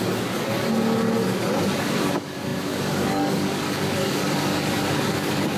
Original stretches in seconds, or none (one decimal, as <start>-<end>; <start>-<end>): none